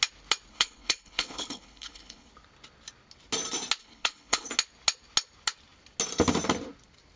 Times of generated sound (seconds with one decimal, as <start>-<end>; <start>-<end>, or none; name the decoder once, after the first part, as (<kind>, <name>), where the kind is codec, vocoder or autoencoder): 0.5-2.3 (codec, HILCodec); 3.8-4.5

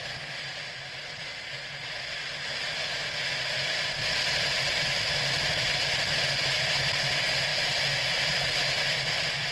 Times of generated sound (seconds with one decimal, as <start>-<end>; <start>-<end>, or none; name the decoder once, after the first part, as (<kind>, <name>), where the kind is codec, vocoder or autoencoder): none

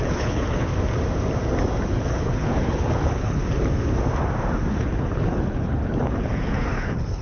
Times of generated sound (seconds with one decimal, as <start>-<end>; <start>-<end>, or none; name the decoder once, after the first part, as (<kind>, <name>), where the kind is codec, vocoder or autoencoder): 0.0-0.7 (codec, HILCodec); 1.9-3.4; 4.7-7.2

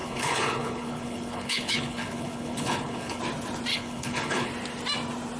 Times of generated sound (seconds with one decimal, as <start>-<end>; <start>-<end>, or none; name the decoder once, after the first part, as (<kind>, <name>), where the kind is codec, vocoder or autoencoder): 0.0-3.2 (codec, HILCodec); 3.7-4.5